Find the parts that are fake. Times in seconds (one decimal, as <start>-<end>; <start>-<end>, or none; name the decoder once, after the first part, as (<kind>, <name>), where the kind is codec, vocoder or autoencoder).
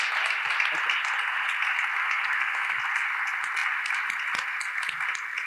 2.0-2.8 (codec, SNAC)